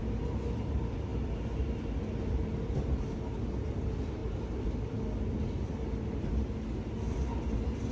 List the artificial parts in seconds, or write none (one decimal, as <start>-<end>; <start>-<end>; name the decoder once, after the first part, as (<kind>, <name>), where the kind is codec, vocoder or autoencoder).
none